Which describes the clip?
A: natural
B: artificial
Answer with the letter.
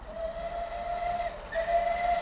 A